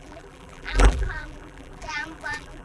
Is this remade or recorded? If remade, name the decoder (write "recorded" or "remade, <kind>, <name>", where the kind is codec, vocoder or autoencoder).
remade, vocoder, BigVGAN v2